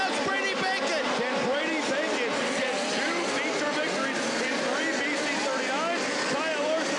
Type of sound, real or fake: real